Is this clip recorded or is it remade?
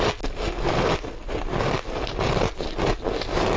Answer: recorded